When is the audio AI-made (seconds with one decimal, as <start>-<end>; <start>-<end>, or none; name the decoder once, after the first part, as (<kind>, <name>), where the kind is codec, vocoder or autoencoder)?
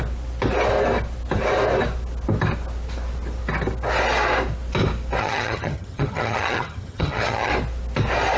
5.2-7.5 (vocoder, HiFi-GAN)